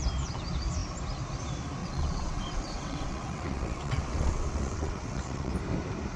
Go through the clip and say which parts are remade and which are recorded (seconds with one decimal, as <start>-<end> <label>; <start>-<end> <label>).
0.0-1.8 recorded; 1.8-5.5 remade; 5.5-6.2 recorded

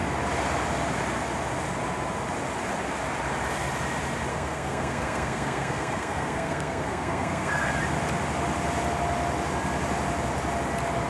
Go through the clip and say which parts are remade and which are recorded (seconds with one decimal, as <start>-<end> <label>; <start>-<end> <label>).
0.0-4.3 recorded; 4.3-7.7 remade; 7.7-11.1 recorded

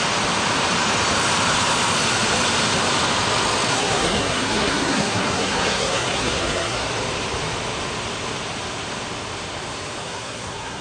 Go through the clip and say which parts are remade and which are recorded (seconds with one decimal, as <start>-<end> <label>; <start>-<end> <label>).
0.0-3.7 recorded; 3.7-6.9 remade; 6.9-10.0 recorded; 10.0-10.8 remade

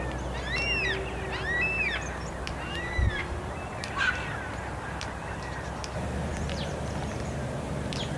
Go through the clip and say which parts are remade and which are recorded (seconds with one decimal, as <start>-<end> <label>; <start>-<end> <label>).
0.0-8.2 recorded

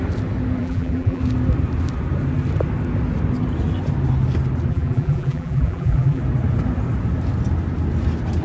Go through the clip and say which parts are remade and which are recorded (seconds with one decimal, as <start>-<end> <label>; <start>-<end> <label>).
0.0-0.6 recorded; 0.6-1.2 remade; 1.2-4.7 recorded; 4.7-6.2 remade; 6.2-8.4 recorded

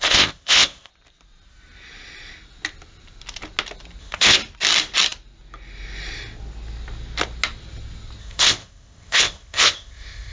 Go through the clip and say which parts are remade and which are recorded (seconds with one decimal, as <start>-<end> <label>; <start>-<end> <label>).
0.0-0.9 remade; 0.9-4.0 recorded; 4.0-4.4 remade; 4.4-8.2 recorded; 8.2-10.3 remade